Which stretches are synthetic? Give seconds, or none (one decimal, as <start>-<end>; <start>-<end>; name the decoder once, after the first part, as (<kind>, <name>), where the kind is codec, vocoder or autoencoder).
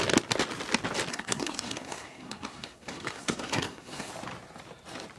1.1-4.1 (codec, SNAC)